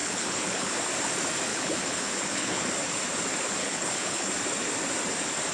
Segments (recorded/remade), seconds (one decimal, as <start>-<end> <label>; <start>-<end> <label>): 0.0-0.8 remade; 0.8-1.5 recorded; 1.5-2.6 remade; 2.6-3.6 recorded; 3.6-4.3 remade; 4.3-5.5 recorded